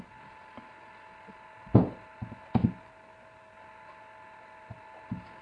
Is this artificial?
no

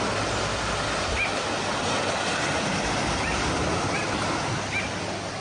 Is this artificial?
no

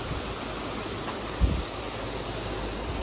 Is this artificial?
no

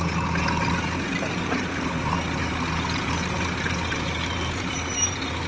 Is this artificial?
no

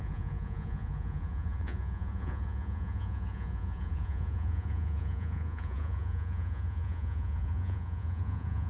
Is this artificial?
yes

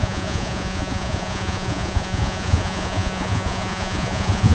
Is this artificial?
yes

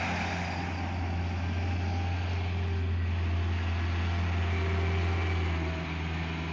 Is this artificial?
no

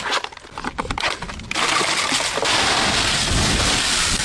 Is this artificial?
no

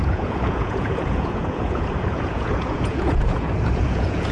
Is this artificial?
yes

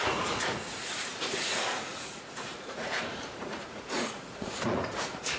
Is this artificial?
yes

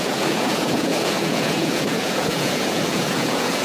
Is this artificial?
yes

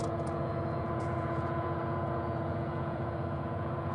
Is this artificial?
yes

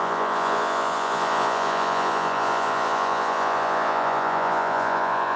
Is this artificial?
yes